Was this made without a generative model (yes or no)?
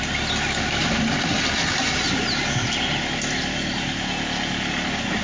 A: yes